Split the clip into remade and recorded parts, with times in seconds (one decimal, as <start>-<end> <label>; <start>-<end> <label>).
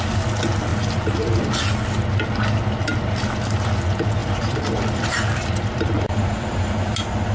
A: 0.0-4.2 recorded; 4.2-6.7 remade; 6.7-7.3 recorded